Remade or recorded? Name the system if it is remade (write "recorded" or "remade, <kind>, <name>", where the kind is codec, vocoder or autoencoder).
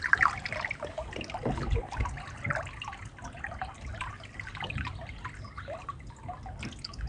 recorded